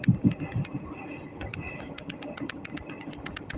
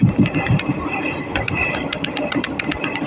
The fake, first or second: second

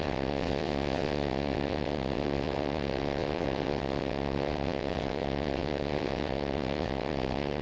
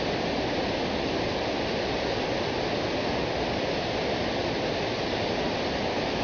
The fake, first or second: first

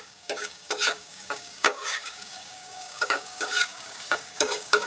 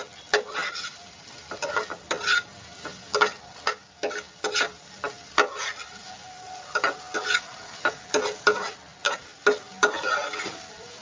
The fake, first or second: first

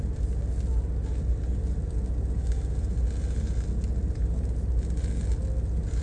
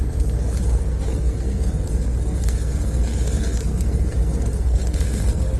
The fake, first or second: second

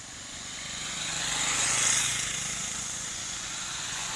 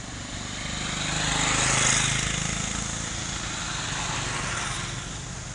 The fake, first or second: first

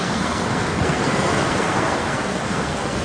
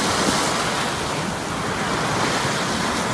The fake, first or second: first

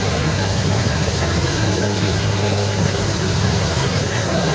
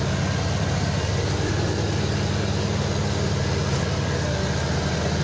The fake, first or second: first